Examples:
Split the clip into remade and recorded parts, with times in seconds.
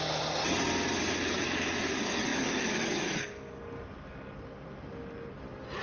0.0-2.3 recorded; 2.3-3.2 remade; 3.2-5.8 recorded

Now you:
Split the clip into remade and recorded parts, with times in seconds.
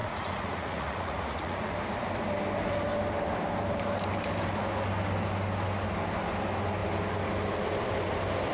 0.0-1.7 remade; 1.7-8.5 recorded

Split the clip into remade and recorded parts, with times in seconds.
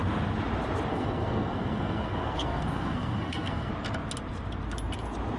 0.0-0.9 recorded; 0.9-3.7 remade; 3.7-5.4 recorded